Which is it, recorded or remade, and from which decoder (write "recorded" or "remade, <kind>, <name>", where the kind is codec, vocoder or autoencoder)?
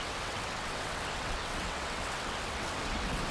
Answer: remade, vocoder, WaveNeXt